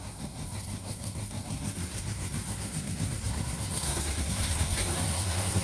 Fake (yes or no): yes